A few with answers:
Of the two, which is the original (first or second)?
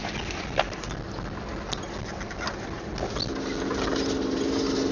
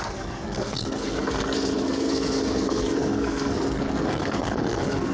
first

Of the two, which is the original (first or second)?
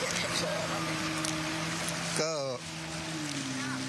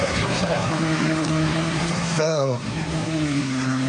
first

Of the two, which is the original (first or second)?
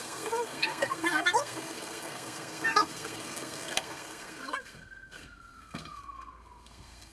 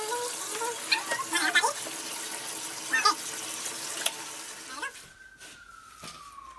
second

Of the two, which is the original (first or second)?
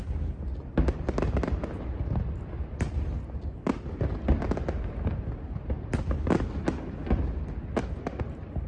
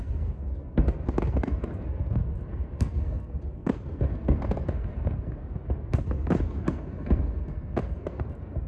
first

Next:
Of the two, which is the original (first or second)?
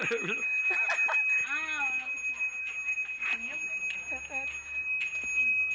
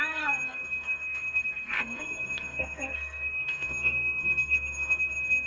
first